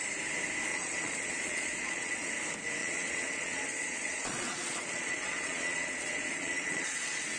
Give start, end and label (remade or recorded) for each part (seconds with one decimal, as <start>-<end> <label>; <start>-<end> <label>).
0.0-0.7 recorded; 0.7-2.3 remade; 2.3-2.8 recorded; 2.8-7.4 remade